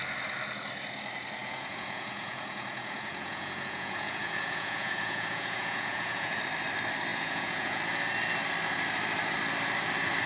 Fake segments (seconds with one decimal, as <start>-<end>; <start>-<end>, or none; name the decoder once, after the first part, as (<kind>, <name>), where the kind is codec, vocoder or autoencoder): 1.4-6.4 (vocoder, Vocos); 7.1-7.8